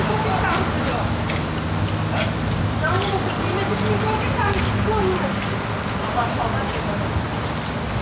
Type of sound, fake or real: real